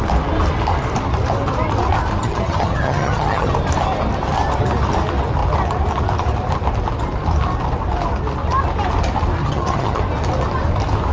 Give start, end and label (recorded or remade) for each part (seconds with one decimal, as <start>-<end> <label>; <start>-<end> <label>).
0.0-2.2 recorded; 2.2-3.5 remade; 3.5-9.4 recorded; 9.4-10.0 remade; 10.0-11.1 recorded